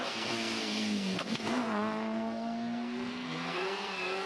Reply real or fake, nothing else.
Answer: fake